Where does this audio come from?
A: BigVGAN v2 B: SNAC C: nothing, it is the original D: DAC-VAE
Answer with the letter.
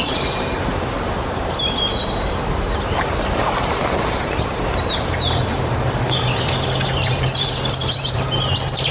A